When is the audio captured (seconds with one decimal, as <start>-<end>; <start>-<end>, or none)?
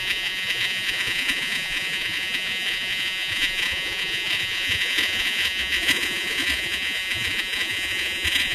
none